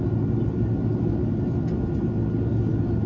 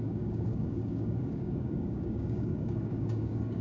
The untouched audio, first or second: first